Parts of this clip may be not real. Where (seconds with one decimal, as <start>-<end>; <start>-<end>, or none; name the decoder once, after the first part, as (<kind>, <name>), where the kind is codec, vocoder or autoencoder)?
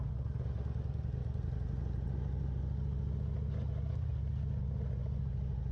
none